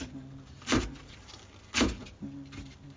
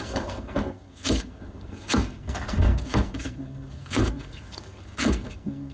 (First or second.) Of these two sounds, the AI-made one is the second